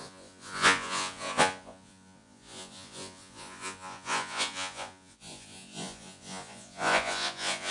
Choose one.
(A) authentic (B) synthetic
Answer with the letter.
B